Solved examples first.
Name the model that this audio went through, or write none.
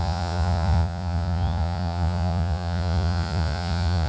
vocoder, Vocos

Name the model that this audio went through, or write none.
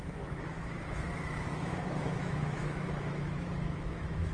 autoencoder, DAC-VAE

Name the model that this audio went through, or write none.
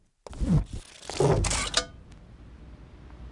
none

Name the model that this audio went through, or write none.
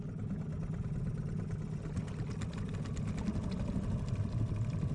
none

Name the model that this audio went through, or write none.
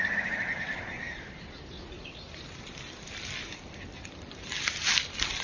none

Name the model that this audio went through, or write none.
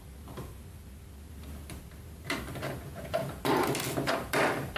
none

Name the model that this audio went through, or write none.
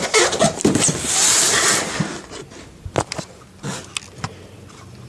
none